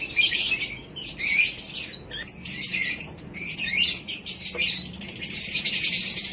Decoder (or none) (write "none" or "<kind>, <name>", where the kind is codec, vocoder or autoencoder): none